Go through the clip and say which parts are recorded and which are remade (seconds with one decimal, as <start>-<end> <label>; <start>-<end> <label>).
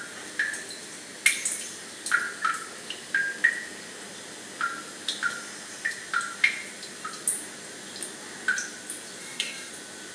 0.0-9.2 recorded; 9.2-9.7 remade; 9.7-10.1 recorded